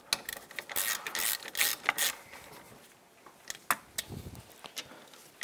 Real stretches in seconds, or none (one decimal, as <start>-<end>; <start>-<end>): 0.0-5.4